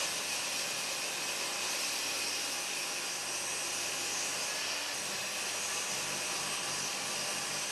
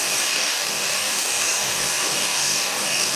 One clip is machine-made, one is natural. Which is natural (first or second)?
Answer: first